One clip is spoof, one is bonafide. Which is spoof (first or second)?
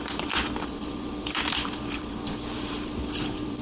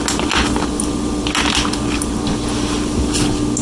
first